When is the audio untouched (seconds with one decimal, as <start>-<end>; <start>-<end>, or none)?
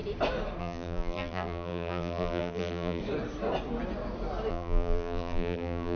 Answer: 0.0-0.6; 3.0-4.5